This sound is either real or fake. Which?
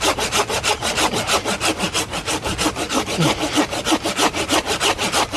real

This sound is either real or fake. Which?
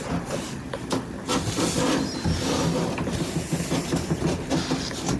real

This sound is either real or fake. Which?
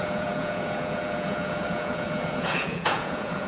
fake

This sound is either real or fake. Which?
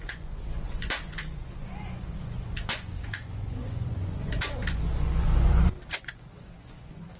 fake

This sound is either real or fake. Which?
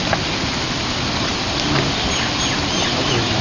real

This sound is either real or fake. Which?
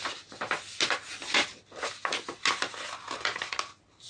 real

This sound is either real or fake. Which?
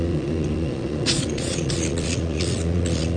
fake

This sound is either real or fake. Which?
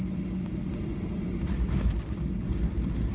real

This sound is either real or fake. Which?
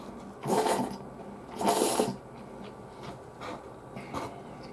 real